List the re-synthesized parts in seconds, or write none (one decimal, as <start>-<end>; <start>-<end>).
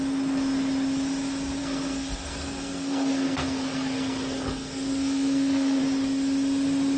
1.6-5.8